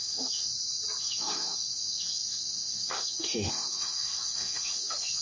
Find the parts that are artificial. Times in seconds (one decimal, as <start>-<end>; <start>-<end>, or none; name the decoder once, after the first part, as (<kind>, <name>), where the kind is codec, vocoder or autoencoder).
0.0-0.5 (autoencoder, DAC-VAE); 1.0-5.2